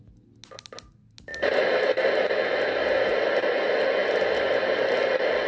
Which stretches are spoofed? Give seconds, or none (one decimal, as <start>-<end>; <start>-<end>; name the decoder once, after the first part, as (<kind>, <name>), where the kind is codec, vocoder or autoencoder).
4.0-5.5 (vocoder, BigVGAN v2)